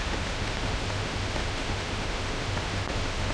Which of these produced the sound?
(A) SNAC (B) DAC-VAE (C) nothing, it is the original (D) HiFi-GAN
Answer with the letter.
B